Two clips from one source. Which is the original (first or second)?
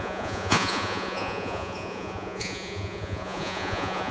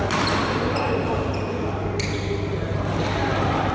second